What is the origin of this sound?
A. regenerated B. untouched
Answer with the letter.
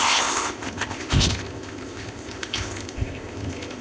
A